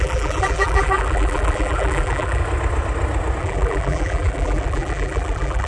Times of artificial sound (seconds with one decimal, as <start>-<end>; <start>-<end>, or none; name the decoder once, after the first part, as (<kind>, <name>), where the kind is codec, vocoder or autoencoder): 0.0-2.4 (vocoder, BigVGAN v2); 3.4-5.7